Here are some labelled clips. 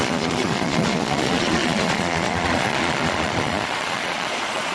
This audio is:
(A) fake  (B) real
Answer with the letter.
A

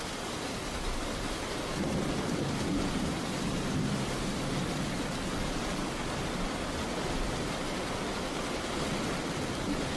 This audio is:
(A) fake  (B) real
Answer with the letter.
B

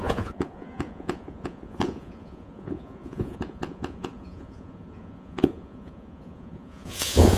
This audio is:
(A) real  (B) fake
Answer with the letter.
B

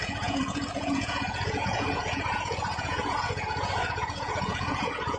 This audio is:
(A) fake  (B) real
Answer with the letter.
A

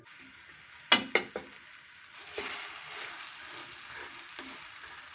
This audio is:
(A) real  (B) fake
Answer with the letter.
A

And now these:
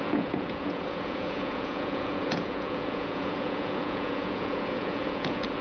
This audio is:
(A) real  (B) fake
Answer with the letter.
B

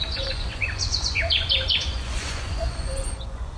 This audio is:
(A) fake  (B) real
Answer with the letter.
A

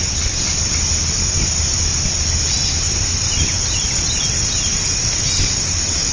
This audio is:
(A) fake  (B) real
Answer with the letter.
B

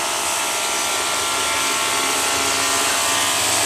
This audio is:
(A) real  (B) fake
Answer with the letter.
A